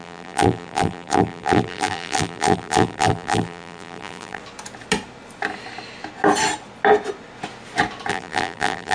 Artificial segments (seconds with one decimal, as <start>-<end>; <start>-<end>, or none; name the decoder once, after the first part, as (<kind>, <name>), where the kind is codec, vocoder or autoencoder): 0.0-4.4 (vocoder, BigVGAN v2); 8.1-8.9